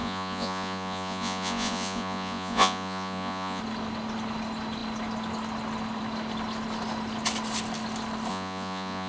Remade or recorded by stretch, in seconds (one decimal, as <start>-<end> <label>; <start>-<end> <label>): 0.0-3.6 remade; 3.6-8.3 recorded; 8.3-9.1 remade